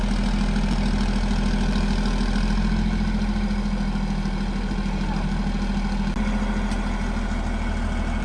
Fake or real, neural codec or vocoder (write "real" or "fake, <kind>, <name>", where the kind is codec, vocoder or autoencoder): real